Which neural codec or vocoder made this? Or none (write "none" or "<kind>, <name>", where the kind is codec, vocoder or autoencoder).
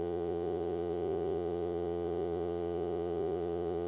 vocoder, Vocos